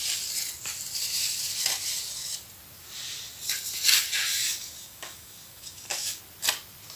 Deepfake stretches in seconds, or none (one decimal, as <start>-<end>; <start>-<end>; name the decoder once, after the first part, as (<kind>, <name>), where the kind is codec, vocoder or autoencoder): 4.3-6.2 (codec, DAC)